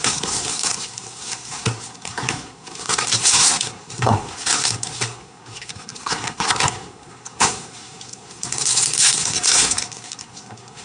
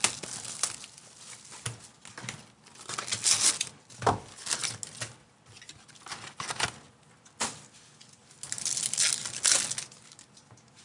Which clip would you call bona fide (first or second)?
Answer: second